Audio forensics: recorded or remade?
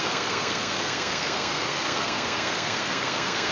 remade